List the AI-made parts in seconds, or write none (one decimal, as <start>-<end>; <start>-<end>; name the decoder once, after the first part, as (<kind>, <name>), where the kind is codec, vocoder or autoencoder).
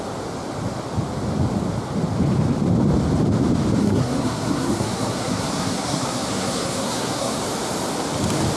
3.8-7.4 (codec, SNAC)